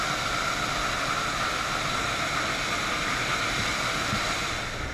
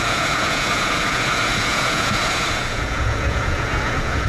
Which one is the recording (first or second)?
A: first